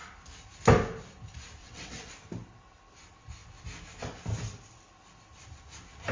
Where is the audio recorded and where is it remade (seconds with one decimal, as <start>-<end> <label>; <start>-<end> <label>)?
0.0-1.6 recorded; 1.6-2.1 remade; 2.1-6.1 recorded